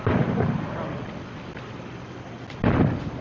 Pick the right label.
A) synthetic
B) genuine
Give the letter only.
B